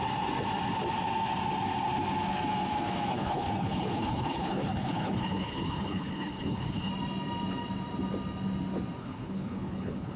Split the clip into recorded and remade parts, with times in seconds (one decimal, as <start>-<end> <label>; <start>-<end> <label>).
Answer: 0.0-3.1 recorded; 3.1-6.9 remade; 6.9-9.0 recorded; 9.0-10.2 remade